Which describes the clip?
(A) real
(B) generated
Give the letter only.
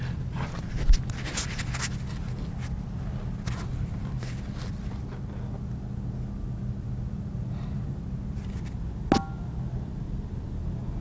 A